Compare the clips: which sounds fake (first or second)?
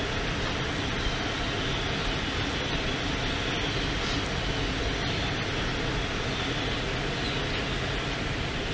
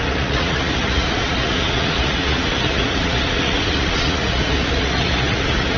second